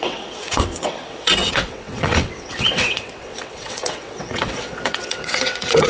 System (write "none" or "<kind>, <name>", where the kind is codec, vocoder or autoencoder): vocoder, WaveNeXt